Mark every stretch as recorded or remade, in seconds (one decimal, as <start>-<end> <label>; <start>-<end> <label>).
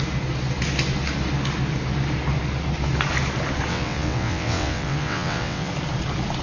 0.0-3.7 recorded; 3.7-5.7 remade; 5.7-6.4 recorded